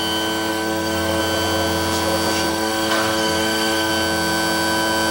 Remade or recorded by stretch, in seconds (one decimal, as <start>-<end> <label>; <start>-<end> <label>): 0.0-0.5 recorded; 0.5-1.2 remade; 1.2-2.5 recorded; 2.5-3.9 remade; 3.9-5.1 recorded